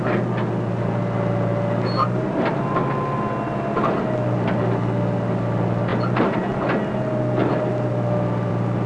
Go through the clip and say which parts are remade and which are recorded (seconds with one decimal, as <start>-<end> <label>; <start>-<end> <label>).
0.0-8.9 recorded